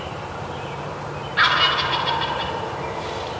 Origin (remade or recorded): remade